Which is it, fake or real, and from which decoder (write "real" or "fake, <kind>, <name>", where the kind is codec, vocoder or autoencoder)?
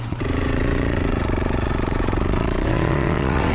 fake, vocoder, WaveNeXt